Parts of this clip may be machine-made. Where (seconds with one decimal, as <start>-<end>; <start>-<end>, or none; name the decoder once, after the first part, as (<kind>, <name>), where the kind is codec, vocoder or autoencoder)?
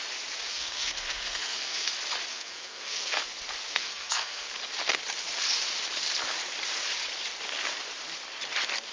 0.5-1.9 (codec, SNAC); 2.3-3.2; 3.7-4.5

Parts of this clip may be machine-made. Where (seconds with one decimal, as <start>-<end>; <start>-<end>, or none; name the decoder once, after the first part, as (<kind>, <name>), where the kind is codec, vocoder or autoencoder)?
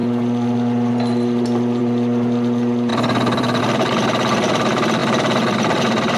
0.0-1.8 (vocoder, BigVGAN v2); 2.9-3.6; 5.0-5.8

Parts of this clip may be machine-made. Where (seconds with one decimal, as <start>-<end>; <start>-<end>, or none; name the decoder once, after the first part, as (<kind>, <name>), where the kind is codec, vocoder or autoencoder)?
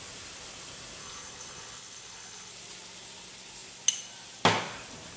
1.0-2.5 (codec, HILCodec)